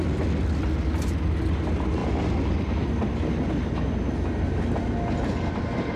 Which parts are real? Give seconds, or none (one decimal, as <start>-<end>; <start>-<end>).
0.0-6.0